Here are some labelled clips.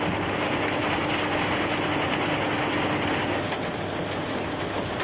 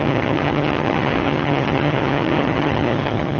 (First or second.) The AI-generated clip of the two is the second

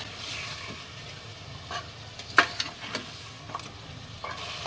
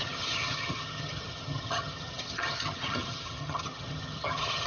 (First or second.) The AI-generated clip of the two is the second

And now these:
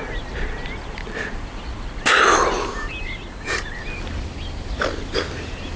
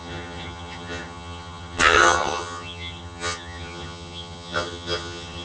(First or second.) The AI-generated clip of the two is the second